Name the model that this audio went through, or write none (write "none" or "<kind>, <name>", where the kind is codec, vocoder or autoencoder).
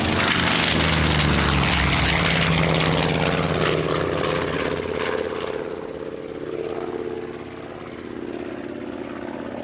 none